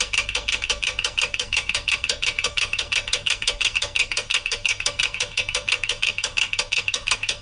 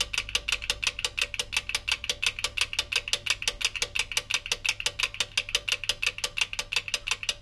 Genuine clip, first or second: second